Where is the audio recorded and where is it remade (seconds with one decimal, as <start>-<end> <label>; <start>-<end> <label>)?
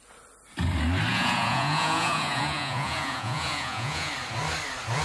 0.0-1.1 recorded; 1.1-4.1 remade; 4.1-5.0 recorded